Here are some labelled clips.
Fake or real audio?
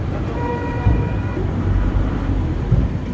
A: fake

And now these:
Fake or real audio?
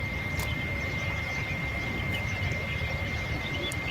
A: fake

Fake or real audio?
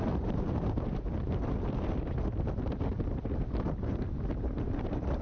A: fake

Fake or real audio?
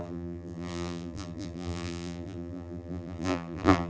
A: fake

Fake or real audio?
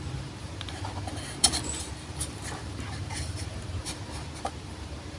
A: fake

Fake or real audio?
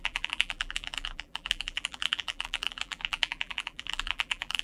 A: fake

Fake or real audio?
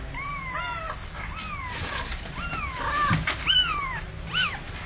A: fake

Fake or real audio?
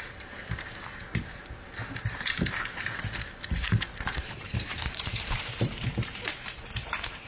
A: fake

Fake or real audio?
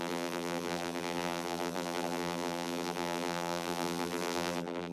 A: fake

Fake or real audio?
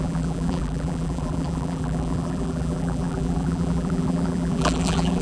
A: fake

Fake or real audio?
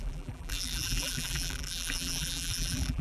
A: fake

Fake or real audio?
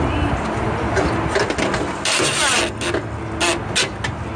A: real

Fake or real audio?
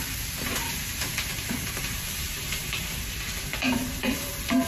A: fake